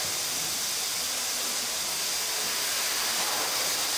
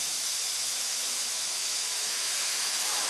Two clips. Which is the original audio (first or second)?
first